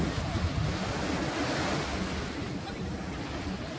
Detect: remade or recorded recorded